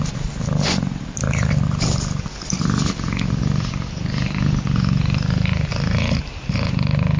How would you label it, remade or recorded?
recorded